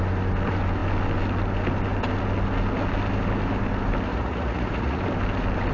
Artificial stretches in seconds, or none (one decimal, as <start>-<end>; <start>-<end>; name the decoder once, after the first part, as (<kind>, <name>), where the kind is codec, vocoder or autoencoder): 4.1-5.0 (vocoder, Vocos)